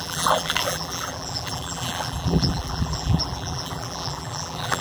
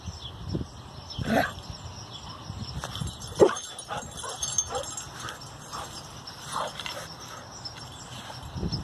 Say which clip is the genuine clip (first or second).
second